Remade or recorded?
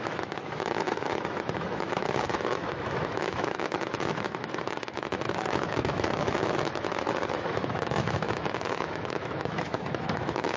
remade